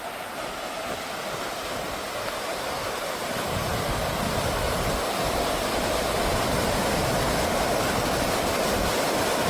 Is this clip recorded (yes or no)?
yes